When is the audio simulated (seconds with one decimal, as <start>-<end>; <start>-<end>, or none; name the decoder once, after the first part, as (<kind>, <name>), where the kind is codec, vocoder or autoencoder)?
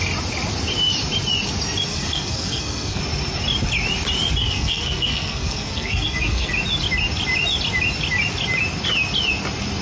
1.9-3.0 (codec, SNAC); 4.4-6.5